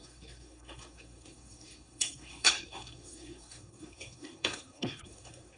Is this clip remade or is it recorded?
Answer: remade